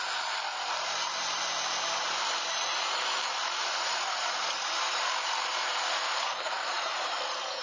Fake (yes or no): yes